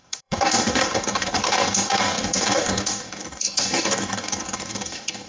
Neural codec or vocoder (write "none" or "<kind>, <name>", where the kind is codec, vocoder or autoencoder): codec, DAC